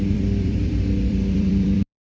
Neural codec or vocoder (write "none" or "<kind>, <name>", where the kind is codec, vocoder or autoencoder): vocoder, BigVGAN v2